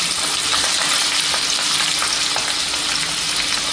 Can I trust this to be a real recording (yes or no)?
yes